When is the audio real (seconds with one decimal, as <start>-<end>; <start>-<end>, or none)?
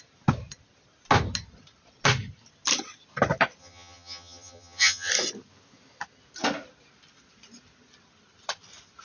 0.0-3.6; 5.1-9.0